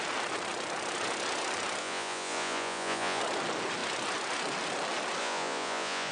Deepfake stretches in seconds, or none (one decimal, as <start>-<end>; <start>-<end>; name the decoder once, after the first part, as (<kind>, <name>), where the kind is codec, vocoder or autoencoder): 1.8-3.2 (vocoder, Vocos); 5.2-6.1